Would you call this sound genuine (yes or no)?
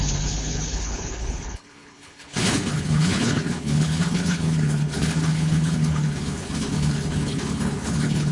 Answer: no